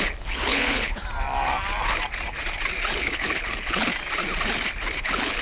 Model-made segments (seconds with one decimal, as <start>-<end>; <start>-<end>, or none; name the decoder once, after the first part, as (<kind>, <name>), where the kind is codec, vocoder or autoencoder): 0.0-1.0 (codec, HILCodec); 3.0-3.9; 5.0-5.4